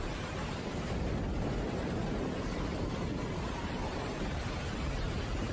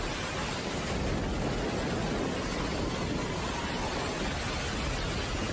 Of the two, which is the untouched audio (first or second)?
second